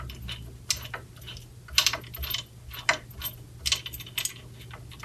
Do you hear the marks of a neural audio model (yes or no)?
no